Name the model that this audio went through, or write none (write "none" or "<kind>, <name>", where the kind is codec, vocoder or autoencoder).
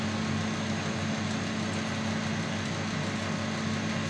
none